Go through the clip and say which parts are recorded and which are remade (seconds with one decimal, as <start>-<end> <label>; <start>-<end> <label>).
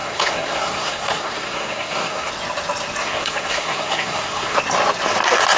0.0-2.3 remade; 2.3-3.0 recorded; 3.0-4.6 remade; 4.6-5.6 recorded